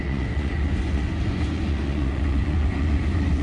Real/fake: fake